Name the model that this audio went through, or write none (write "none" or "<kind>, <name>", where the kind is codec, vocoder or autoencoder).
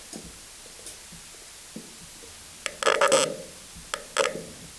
none